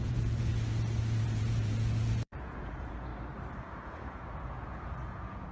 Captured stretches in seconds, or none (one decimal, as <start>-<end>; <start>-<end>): 0.5-1.2; 3.1-3.6